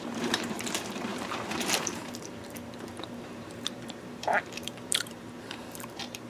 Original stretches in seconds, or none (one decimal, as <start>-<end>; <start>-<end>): none